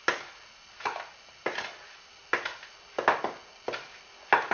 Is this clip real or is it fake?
real